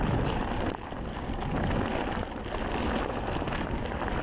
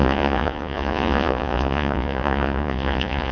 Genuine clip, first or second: first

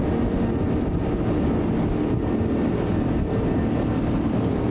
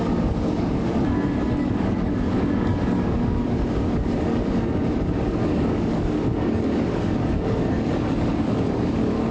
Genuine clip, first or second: first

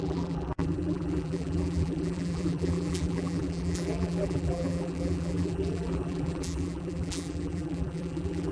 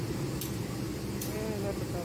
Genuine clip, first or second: second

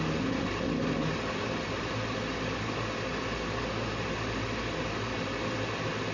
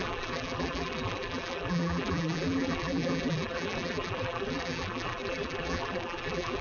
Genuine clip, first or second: first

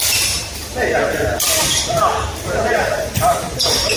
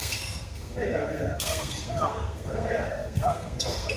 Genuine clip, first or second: first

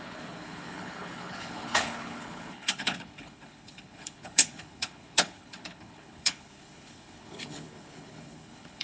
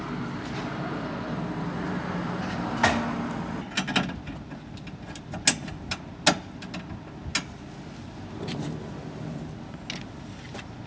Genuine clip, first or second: second